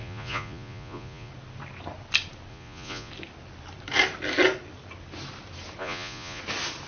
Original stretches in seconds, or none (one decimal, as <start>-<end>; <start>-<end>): 1.3-2.5; 3.1-5.8; 6.4-6.9